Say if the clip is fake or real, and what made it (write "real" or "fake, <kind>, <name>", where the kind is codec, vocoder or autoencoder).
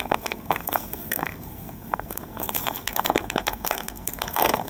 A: fake, codec, SNAC